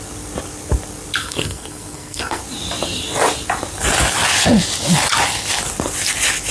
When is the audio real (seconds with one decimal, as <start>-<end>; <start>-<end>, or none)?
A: 0.0-1.2; 2.4-6.5